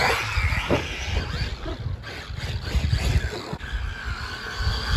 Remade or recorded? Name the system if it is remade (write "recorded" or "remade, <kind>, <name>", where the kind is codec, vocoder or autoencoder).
recorded